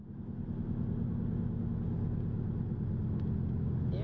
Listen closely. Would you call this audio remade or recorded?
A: recorded